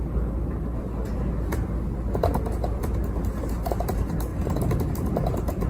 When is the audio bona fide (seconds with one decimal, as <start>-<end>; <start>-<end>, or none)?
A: 0.0-5.7